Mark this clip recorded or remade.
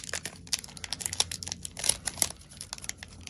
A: recorded